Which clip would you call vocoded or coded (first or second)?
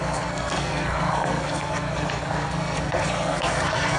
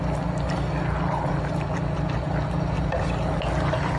first